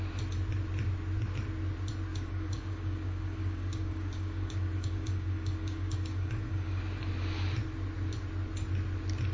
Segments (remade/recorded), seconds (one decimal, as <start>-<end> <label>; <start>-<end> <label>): 0.0-2.1 recorded; 2.1-6.8 remade; 6.8-9.3 recorded